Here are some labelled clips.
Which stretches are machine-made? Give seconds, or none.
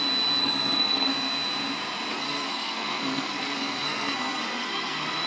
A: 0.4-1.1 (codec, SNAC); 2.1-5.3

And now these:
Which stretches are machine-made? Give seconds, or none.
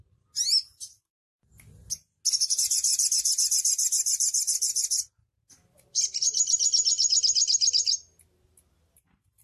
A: none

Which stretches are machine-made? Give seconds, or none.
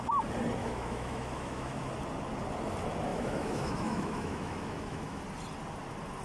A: 0.6-1.9 (autoencoder, DAC-VAE); 3.1-5.2